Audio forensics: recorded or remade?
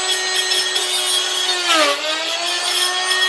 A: recorded